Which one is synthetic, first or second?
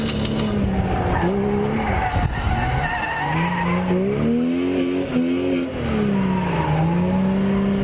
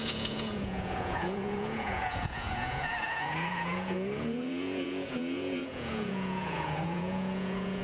second